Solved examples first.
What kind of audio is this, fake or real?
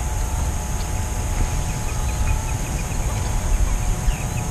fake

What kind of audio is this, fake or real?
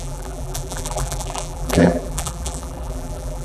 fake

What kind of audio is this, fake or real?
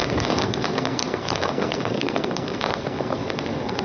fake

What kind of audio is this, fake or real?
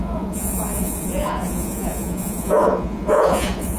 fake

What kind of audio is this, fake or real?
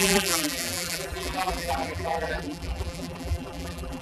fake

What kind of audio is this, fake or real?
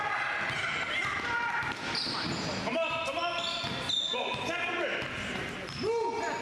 real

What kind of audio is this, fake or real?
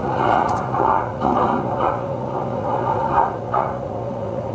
fake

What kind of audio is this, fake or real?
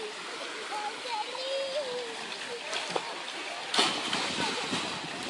real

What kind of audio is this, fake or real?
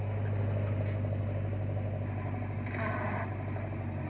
real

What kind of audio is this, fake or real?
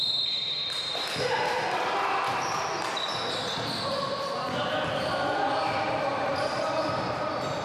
real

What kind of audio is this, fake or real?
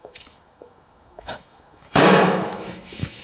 fake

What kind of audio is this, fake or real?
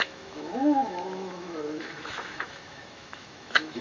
fake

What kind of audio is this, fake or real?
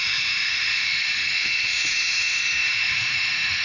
fake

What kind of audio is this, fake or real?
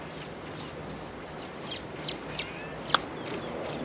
real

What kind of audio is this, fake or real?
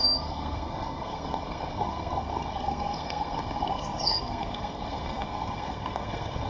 fake